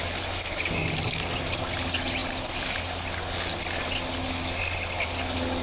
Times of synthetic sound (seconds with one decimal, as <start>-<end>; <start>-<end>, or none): none